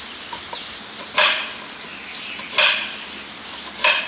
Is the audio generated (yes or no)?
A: no